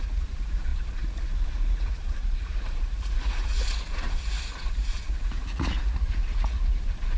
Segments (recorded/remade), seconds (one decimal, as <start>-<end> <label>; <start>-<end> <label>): 0.0-7.2 remade